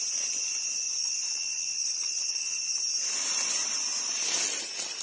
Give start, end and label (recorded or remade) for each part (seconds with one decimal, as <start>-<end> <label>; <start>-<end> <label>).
0.0-1.0 recorded; 1.0-2.8 remade; 2.8-5.0 recorded

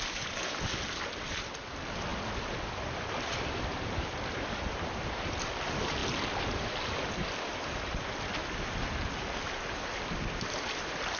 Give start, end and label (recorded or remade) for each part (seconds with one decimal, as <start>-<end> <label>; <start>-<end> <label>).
0.0-11.2 recorded